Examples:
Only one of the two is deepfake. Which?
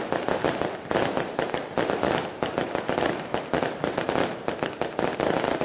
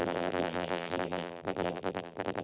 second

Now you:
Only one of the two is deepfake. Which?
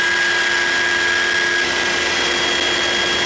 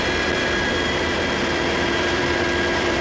second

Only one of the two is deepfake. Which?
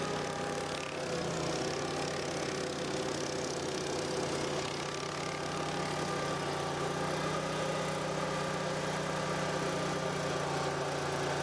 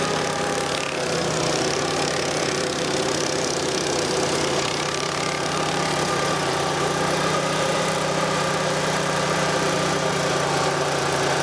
second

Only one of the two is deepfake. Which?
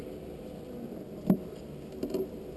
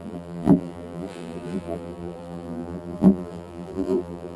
second